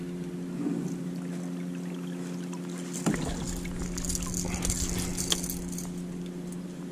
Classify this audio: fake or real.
real